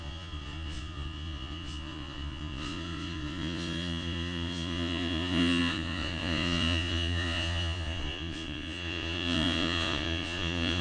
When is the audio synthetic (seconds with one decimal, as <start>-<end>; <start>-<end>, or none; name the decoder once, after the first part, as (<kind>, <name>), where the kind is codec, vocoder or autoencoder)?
0.0-10.8 (vocoder, Vocos)